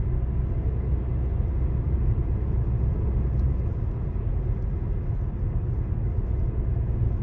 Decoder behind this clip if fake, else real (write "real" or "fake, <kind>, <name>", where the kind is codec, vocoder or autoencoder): real